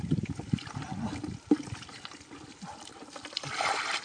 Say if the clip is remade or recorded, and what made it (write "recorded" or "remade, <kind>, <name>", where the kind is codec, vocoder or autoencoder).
recorded